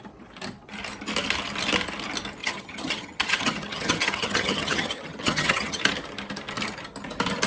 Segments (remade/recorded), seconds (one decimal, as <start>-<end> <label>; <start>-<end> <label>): 0.0-2.4 recorded; 2.4-5.8 remade; 5.8-7.5 recorded